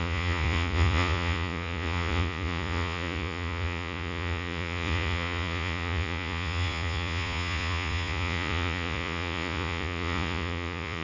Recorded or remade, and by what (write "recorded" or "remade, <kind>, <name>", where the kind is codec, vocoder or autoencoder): remade, vocoder, Vocos